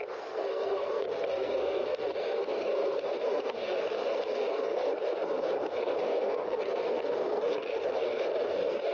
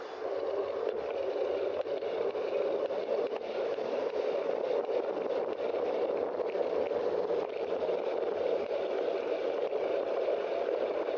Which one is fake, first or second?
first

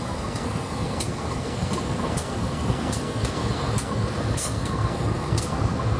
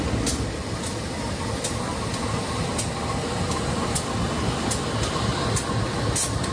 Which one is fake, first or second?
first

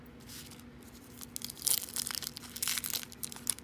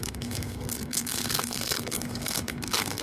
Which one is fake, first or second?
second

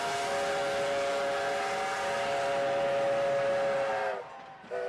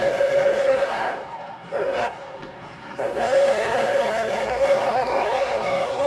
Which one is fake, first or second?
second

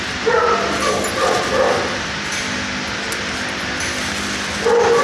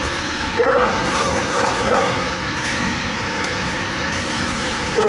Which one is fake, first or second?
second